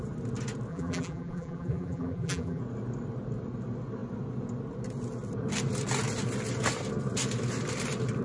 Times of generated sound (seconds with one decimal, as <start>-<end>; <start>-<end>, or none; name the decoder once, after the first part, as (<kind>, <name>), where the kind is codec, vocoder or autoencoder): 0.7-2.6 (vocoder, BigVGAN v2)